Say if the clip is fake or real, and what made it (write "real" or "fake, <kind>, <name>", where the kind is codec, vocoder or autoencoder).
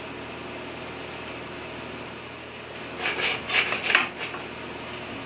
real